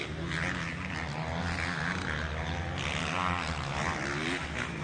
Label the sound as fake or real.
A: real